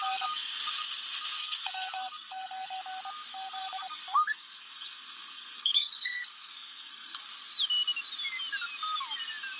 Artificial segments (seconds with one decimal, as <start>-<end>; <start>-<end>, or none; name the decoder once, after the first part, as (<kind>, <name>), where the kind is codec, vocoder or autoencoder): 0.0-0.7 (codec, SNAC); 1.4-2.8; 3.3-7.2